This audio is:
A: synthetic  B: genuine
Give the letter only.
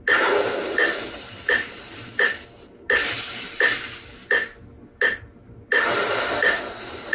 B